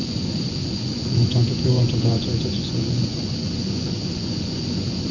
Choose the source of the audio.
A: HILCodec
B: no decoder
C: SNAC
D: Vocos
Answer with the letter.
D